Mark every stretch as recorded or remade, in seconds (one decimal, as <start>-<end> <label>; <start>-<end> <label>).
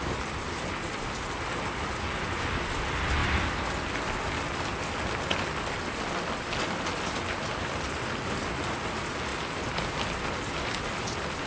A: 0.0-11.5 recorded